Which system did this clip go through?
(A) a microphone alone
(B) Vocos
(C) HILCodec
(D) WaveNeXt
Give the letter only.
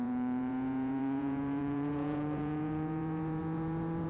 B